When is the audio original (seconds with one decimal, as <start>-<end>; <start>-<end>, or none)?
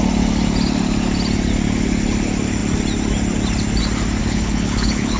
0.0-4.2